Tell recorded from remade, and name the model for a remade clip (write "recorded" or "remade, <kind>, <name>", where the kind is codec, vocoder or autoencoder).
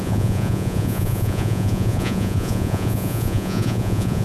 remade, vocoder, Vocos